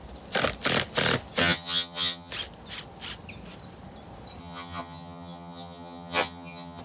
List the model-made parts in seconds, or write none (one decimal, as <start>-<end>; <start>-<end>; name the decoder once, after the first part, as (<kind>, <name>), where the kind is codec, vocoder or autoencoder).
1.4-2.3 (vocoder, HiFi-GAN); 4.4-6.8